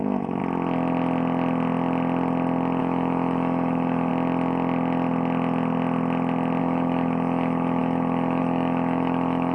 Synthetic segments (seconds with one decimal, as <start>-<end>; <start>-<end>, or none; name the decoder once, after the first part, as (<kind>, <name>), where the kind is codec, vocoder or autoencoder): 0.0-0.4 (autoencoder, DAC-VAE); 2.8-4.1; 6.6-9.5